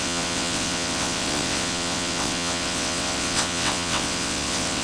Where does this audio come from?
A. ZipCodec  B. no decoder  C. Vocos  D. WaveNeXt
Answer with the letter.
D